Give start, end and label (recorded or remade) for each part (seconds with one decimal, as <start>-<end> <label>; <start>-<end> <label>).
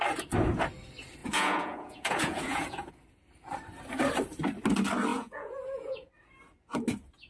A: 0.0-1.2 recorded; 1.2-2.9 remade; 2.9-5.1 recorded; 5.1-6.1 remade; 6.1-7.3 recorded